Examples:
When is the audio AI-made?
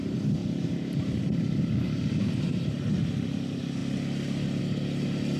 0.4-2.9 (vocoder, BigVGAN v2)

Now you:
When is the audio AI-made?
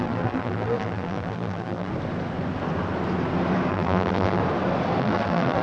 0.0-1.9 (vocoder, BigVGAN v2); 3.7-4.4; 5.0-5.6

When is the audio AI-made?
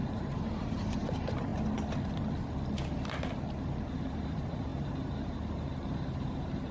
0.0-1.5 (vocoder, BigVGAN v2); 3.9-6.7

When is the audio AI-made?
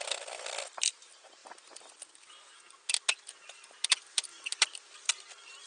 4.0-5.7 (vocoder, BigVGAN v2)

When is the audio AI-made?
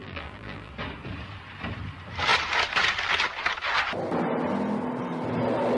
0.0-0.7 (vocoder, BigVGAN v2)